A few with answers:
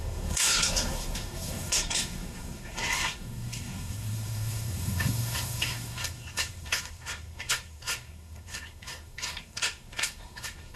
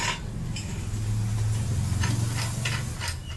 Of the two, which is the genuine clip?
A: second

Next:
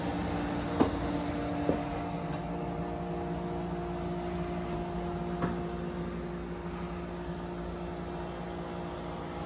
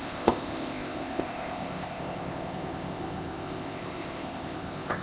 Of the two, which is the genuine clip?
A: first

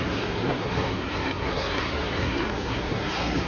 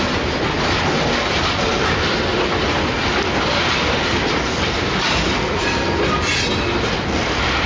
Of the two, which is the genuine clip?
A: second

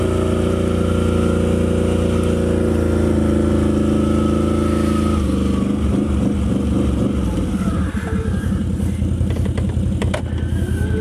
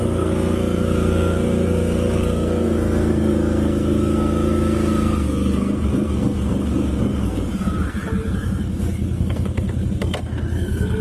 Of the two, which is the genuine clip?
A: first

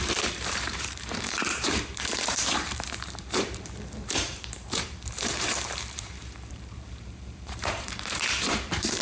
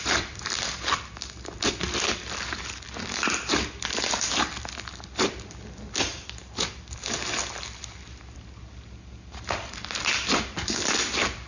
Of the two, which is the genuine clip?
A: second